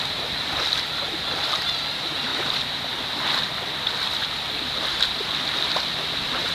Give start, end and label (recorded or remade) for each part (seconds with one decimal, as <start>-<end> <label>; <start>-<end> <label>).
0.0-2.3 recorded; 2.3-3.0 remade; 3.0-6.5 recorded